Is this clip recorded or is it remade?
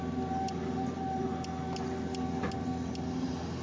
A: recorded